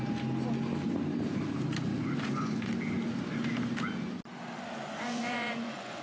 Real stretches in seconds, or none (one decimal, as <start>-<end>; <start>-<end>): 0.0-1.9; 2.7-4.8